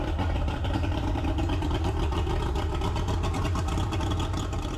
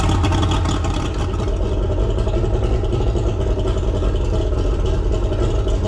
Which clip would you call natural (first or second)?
second